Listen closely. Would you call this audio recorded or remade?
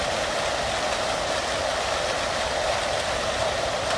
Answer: recorded